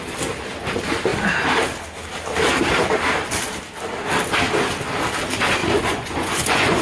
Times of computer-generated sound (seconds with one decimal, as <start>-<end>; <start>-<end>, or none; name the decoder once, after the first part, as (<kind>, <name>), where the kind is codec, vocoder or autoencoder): 5.6-6.8 (vocoder, Vocos)